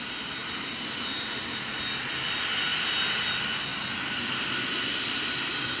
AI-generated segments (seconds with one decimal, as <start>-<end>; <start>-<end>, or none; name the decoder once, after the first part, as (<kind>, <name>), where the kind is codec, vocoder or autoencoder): 3.7-5.1 (vocoder, BigVGAN v2)

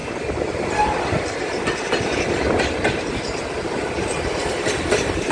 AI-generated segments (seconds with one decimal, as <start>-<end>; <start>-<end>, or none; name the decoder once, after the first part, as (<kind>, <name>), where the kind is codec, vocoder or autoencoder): 4.4-5.3 (vocoder, BigVGAN v2)

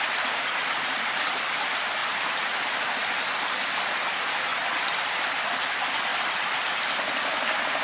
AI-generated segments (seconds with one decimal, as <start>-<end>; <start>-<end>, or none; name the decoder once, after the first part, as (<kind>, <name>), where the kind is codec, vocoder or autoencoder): 2.0-2.6 (vocoder, BigVGAN v2); 4.5-5.1; 6.1-6.7

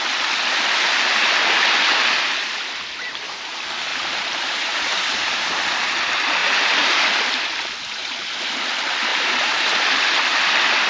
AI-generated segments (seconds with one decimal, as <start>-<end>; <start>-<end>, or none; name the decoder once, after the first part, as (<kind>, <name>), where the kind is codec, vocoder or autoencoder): 3.9-5.6 (vocoder, BigVGAN v2); 9.1-9.9

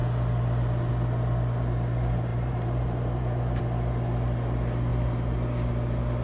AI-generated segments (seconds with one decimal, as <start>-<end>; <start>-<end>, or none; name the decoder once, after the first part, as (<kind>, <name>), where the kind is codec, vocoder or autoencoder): 2.3-3.6 (vocoder, BigVGAN v2)

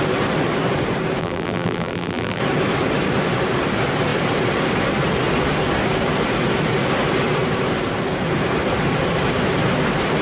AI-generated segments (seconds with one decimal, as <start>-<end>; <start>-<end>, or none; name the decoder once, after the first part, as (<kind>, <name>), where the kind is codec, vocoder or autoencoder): 1.2-2.4 (vocoder, BigVGAN v2)

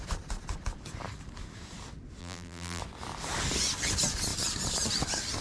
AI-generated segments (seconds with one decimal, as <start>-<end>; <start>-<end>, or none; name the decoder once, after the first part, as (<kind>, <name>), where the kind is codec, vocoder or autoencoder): 2.2-2.8 (vocoder, BigVGAN v2)

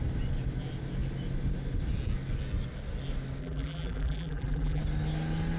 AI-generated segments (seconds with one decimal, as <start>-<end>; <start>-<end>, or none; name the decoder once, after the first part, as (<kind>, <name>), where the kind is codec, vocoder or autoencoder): 3.4-4.8 (vocoder, BigVGAN v2)